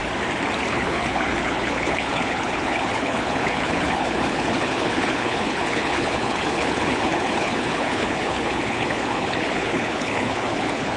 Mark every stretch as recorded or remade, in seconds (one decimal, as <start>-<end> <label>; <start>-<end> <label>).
0.0-0.7 recorded; 0.7-11.0 remade